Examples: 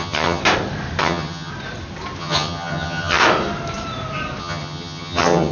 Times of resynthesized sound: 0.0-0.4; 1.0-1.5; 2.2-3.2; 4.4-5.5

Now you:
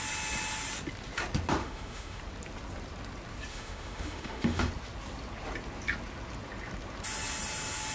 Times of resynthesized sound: 1.6-2.2; 3.5-4.7

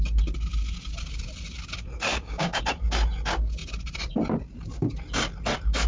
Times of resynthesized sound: 2.1-2.6

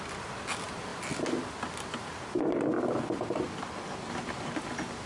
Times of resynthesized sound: 0.9-2.1

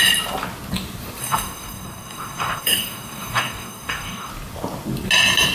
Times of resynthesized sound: 1.2-4.3

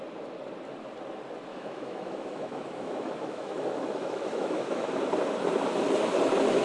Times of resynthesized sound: 1.5-4.9

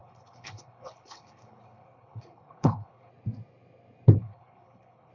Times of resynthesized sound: 0.0-3.1; 4.2-5.1

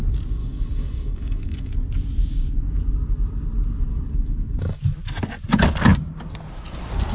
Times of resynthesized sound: 0.4-1.7; 3.9-4.8